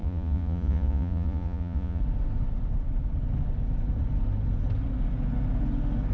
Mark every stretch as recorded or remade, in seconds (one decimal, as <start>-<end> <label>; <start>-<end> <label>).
0.0-2.0 remade; 2.0-6.1 recorded